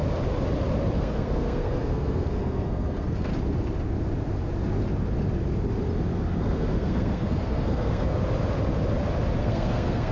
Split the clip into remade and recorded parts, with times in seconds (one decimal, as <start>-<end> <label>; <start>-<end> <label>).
0.0-1.0 recorded; 1.0-3.3 remade; 3.3-6.4 recorded; 6.4-8.2 remade; 8.2-9.4 recorded; 9.4-10.1 remade

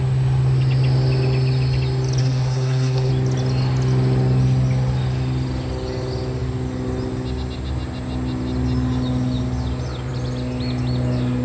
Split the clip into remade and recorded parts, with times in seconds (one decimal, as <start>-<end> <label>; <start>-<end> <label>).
0.0-2.2 recorded; 2.2-3.1 remade; 3.1-11.4 recorded

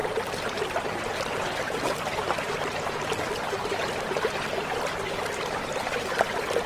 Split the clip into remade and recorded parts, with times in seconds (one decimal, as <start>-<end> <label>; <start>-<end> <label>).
0.0-6.7 recorded

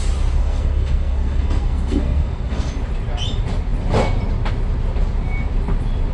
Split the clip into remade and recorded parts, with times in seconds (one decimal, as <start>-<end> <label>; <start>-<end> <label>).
0.0-0.4 recorded; 0.4-2.7 remade; 2.7-6.1 recorded